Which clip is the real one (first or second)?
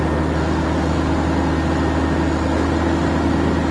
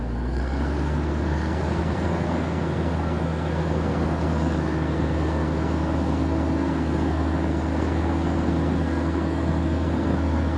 first